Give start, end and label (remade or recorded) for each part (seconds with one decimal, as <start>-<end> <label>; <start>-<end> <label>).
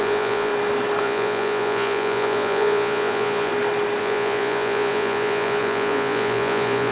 0.0-0.5 remade; 0.5-1.0 recorded; 1.0-3.5 remade; 3.5-4.0 recorded; 4.0-6.9 remade